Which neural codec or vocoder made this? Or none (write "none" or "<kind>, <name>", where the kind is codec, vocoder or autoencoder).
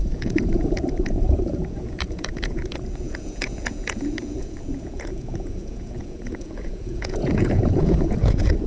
vocoder, Vocos